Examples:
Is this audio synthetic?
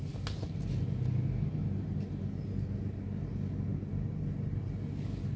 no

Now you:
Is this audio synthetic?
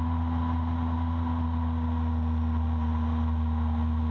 no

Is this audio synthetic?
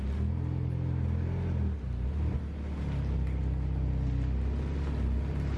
no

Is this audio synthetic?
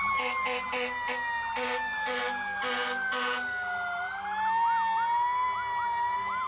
no